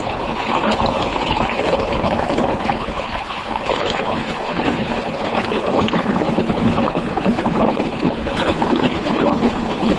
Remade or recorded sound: remade